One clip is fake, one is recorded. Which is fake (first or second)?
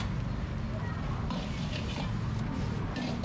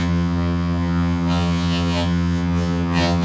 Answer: second